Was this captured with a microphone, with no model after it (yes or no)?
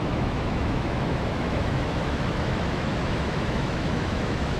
no